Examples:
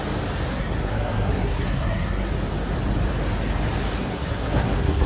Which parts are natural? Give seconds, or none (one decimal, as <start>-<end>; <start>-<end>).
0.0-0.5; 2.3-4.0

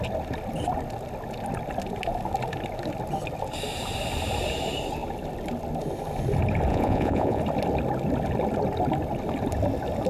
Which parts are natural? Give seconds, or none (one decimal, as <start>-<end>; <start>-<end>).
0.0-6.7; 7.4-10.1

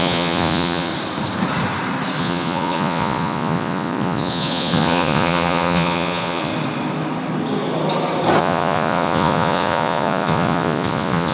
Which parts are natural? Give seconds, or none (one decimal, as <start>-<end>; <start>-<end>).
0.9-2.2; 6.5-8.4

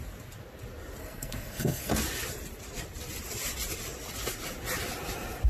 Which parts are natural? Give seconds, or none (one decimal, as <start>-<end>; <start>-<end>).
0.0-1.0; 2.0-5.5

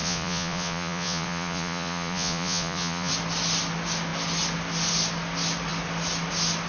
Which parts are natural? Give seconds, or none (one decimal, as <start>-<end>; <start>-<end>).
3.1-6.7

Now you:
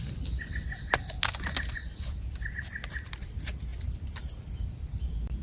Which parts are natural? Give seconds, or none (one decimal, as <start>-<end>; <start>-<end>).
0.0-5.4

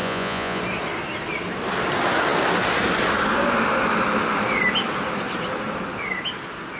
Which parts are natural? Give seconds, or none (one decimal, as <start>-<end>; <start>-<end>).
0.6-6.8